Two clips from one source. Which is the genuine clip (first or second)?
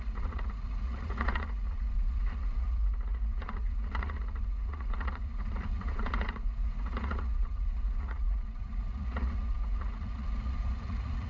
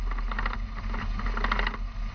second